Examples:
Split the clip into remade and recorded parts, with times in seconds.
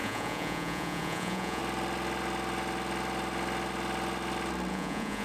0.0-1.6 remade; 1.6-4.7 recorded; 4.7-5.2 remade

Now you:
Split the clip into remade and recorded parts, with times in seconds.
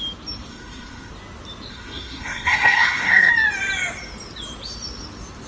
0.0-0.5 recorded; 0.5-1.1 remade; 1.1-1.7 recorded; 1.7-3.3 remade; 3.3-5.5 recorded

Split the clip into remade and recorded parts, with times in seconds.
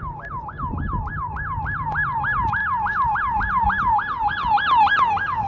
0.0-5.5 recorded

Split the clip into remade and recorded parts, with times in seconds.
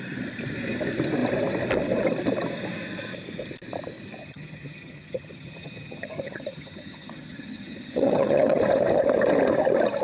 0.0-4.2 recorded; 4.2-8.6 remade; 8.6-10.0 recorded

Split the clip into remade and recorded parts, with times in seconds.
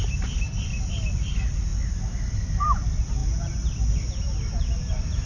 0.0-5.3 recorded